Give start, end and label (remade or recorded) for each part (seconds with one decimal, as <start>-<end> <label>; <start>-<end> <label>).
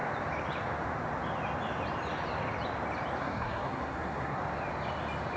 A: 0.0-3.2 recorded; 3.2-4.4 remade; 4.4-5.4 recorded